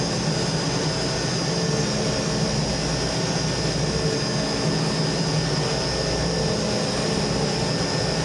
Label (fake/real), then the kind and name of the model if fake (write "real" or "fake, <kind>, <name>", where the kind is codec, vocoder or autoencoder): real